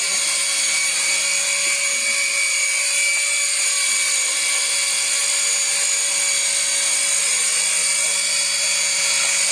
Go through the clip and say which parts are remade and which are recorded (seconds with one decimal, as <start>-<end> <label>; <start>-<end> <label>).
0.0-9.5 recorded